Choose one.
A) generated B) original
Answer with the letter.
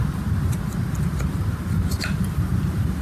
B